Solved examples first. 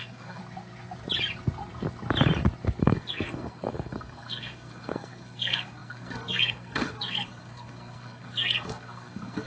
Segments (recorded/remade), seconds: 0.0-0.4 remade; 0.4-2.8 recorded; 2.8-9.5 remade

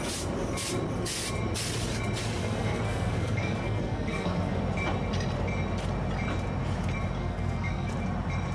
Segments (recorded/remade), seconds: 0.0-2.4 recorded; 2.4-4.6 remade; 4.6-7.2 recorded; 7.2-7.9 remade; 7.9-8.5 recorded

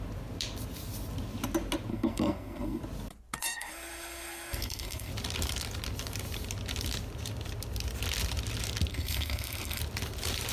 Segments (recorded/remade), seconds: 0.0-1.9 recorded; 1.9-2.8 remade; 2.8-3.4 recorded; 3.4-5.1 remade; 5.1-8.9 recorded; 8.9-9.8 remade; 9.8-10.5 recorded

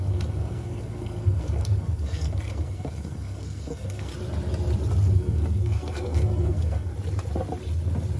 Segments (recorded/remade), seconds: 0.0-4.1 remade; 4.1-5.1 recorded; 5.1-6.9 remade; 6.9-8.2 recorded

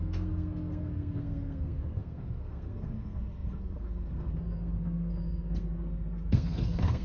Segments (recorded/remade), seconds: 0.0-7.0 remade